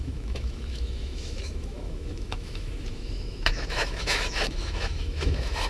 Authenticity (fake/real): fake